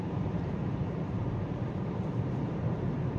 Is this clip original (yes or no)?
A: no